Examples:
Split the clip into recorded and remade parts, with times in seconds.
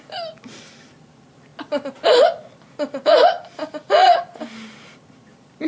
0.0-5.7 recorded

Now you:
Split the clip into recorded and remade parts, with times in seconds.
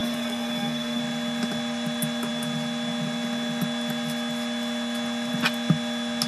0.0-1.0 remade; 1.0-6.3 recorded